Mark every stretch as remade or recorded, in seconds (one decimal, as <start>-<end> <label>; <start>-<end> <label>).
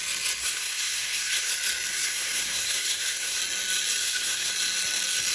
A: 0.0-0.4 recorded; 0.4-1.5 remade; 1.5-1.9 recorded; 1.9-3.4 remade; 3.4-4.0 recorded; 4.0-4.5 remade; 4.5-5.3 recorded